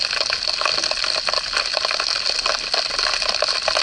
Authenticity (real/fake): real